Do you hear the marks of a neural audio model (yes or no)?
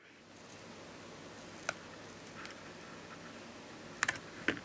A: no